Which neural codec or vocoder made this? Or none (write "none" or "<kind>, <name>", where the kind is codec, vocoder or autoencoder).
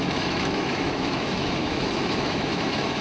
autoencoder, DAC-VAE